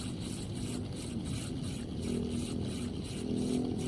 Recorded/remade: recorded